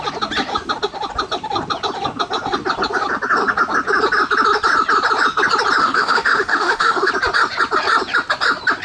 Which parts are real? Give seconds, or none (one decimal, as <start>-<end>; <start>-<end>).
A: 0.0-5.8; 7.1-8.8